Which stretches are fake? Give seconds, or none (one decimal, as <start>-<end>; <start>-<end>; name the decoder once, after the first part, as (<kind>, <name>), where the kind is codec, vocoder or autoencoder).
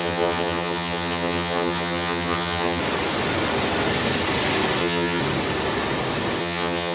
0.0-2.8 (vocoder, HiFi-GAN); 4.8-5.2; 6.4-6.9